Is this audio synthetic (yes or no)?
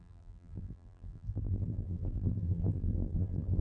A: yes